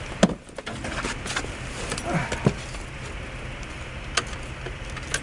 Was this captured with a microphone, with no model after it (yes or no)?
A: yes